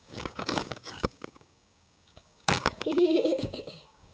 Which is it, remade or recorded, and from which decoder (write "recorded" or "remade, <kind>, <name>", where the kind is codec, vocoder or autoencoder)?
remade, codec, DAC